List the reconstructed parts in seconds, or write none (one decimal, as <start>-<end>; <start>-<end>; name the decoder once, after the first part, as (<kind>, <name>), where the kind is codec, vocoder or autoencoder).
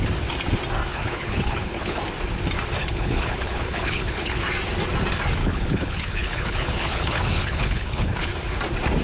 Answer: 0.9-2.0 (codec, HILCodec); 2.8-4.4; 5.4-8.3